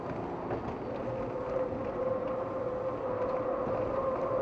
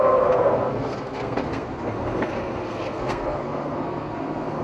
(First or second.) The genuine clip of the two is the first